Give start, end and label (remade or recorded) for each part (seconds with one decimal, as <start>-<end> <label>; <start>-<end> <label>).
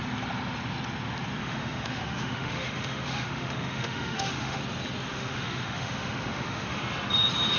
0.0-1.4 recorded; 1.4-4.6 remade; 4.6-5.1 recorded; 5.1-6.8 remade; 6.8-7.6 recorded